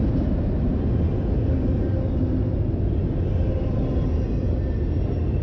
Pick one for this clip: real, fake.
real